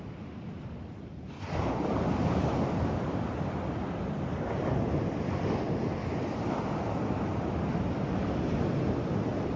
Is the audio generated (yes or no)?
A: no